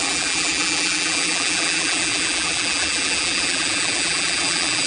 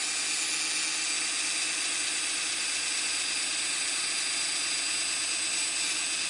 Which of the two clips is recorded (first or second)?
second